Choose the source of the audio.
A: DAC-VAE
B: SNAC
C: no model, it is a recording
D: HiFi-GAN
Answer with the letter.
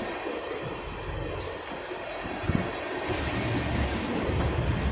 C